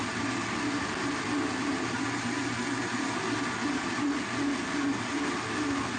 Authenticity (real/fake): real